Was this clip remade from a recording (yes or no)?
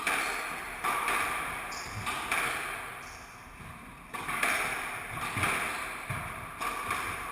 no